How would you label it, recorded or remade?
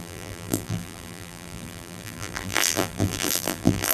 remade